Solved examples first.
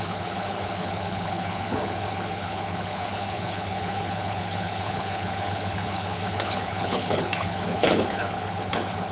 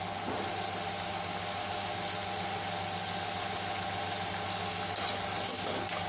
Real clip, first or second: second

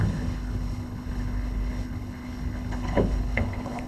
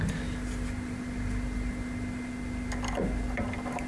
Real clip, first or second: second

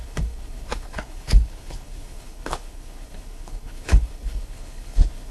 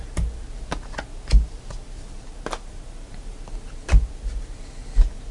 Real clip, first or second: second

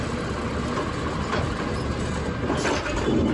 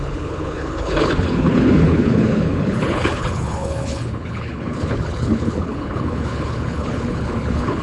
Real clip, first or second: first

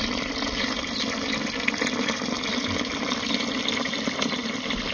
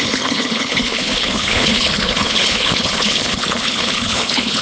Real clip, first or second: first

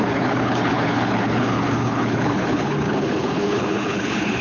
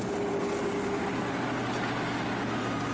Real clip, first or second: second